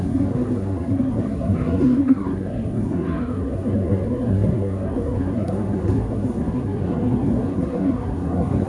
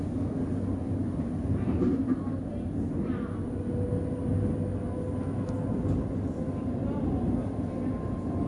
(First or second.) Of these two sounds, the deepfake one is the first